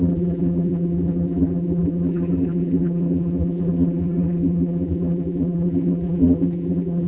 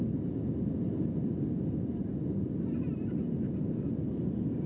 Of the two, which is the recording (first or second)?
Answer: second